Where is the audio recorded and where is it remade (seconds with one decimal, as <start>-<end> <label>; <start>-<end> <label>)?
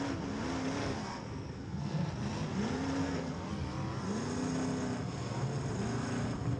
0.0-0.8 recorded; 0.8-2.1 remade; 2.1-3.0 recorded; 3.0-3.5 remade; 3.5-6.6 recorded